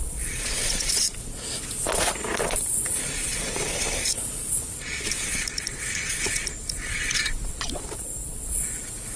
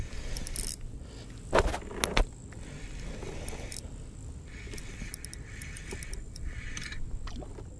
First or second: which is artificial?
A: first